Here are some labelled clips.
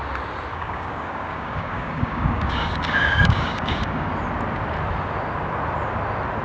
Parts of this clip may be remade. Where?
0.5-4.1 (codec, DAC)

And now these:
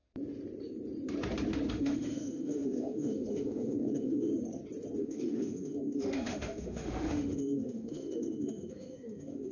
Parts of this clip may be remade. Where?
1.7-4.3 (autoencoder, DAC-VAE); 5.0-9.5

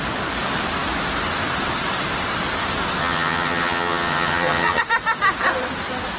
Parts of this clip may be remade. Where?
3.0-4.8 (vocoder, HiFi-GAN)

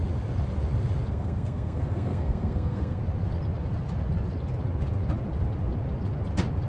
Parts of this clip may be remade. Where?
1.1-3.0 (codec, SNAC)

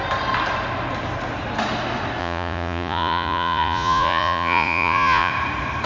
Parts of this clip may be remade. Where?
2.2-5.3 (vocoder, Vocos)

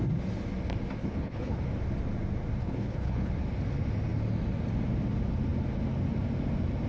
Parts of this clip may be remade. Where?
1.0-1.6 (codec, HILCodec); 2.6-3.3